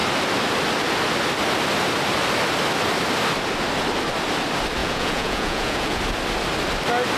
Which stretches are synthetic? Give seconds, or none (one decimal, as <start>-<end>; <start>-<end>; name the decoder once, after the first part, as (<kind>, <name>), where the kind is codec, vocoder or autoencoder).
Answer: 4.8-6.0 (vocoder, Vocos)